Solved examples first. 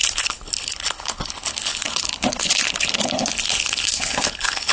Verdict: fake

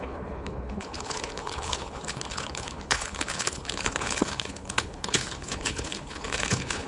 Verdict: fake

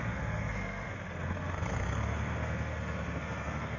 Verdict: fake